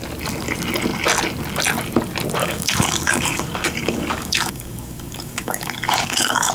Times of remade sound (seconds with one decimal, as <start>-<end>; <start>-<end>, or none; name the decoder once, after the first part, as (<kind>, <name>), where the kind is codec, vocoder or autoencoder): 2.4-6.5 (codec, DAC)

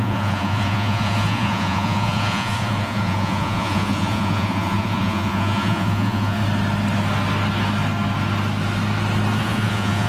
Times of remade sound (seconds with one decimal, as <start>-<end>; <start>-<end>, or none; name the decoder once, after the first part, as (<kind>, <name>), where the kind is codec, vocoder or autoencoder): 0.0-6.4 (vocoder, Vocos); 9.4-10.1

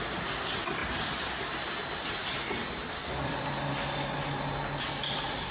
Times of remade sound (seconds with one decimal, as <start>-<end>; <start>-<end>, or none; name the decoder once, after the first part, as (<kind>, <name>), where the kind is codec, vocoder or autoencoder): 3.0-3.5 (vocoder, BigVGAN v2)

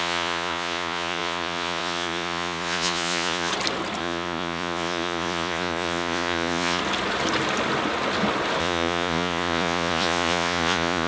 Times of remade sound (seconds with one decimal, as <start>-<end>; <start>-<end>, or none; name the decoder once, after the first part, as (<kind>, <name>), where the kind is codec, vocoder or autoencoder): 0.0-3.5 (vocoder, Vocos); 4.0-6.8; 8.6-11.1